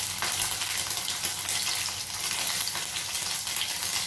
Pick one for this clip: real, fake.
real